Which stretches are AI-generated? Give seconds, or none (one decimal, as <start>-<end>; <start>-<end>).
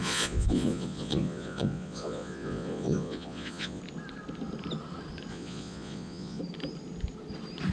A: 0.0-3.8; 5.3-6.4